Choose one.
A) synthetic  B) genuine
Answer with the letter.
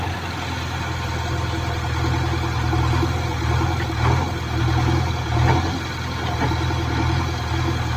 B